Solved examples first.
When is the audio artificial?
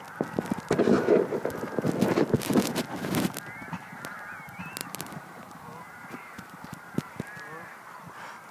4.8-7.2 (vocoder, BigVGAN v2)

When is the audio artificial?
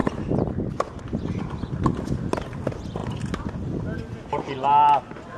none